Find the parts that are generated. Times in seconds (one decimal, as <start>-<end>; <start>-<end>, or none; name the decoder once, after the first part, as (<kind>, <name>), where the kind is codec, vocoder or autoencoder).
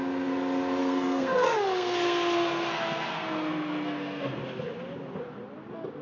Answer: 0.8-4.4 (codec, SNAC)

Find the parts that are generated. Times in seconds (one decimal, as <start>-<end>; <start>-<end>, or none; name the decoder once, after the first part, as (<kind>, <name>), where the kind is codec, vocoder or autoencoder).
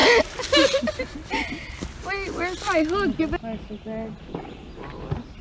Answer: none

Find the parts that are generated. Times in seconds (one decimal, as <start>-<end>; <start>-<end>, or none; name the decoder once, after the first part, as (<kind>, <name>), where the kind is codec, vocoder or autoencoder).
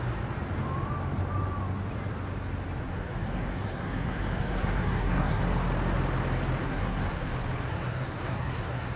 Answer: 2.8-5.4 (codec, SNAC); 6.6-7.3; 7.7-9.0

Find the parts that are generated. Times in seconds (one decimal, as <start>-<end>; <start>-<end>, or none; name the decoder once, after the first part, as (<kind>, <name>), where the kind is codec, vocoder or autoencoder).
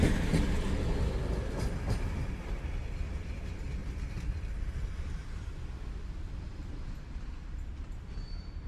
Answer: none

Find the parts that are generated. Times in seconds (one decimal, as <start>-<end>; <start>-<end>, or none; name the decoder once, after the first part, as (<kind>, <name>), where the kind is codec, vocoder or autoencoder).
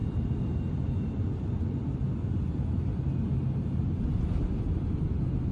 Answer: none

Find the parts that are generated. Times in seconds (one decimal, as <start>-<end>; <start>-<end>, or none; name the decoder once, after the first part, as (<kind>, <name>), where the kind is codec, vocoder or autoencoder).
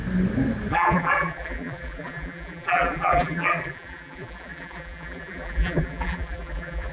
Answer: 0.7-6.9 (vocoder, BigVGAN v2)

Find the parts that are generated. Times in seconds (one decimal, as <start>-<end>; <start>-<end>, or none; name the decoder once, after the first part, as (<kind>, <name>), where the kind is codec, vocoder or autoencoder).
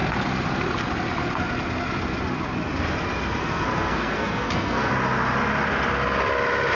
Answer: 3.4-4.9 (codec, SNAC)